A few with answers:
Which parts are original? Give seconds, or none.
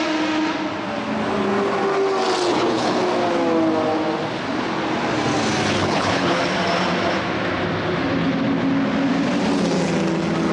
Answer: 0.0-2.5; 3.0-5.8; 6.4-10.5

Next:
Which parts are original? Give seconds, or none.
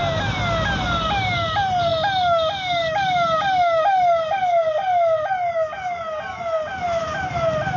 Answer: 0.0-7.8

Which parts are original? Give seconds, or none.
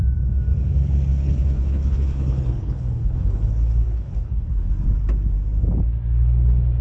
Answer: 0.0-1.1; 4.7-6.8